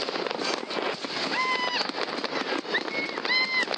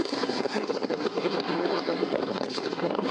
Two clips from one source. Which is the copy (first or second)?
second